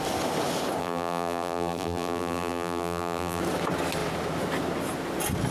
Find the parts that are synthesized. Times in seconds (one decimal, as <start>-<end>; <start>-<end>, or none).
0.8-3.4